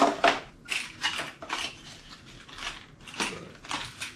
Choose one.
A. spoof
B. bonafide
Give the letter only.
B